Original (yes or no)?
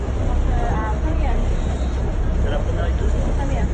yes